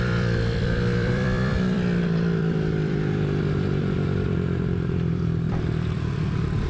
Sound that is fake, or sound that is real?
fake